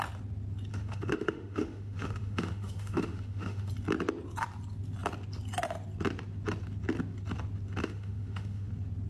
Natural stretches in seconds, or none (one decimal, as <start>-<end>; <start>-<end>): 0.0-0.7; 3.7-7.8; 8.7-9.1